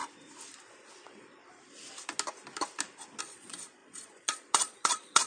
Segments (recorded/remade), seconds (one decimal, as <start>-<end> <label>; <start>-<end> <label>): 0.0-3.2 recorded; 3.2-5.3 remade